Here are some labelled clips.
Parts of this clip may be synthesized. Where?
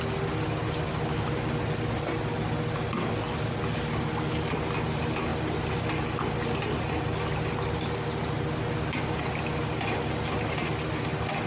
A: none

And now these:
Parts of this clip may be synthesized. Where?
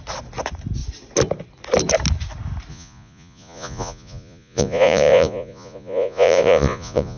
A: 2.7-7.2 (vocoder, Vocos)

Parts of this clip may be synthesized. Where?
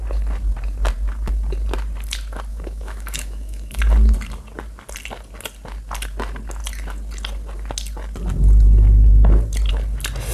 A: 2.5-3.8 (autoencoder, DAC-VAE)